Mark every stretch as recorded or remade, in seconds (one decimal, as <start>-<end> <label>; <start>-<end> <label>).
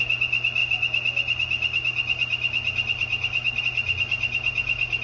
0.0-5.0 recorded